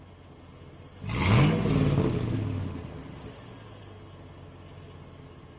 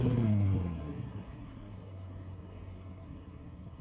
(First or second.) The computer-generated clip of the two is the second